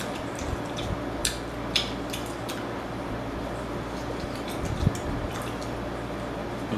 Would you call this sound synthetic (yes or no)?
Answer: no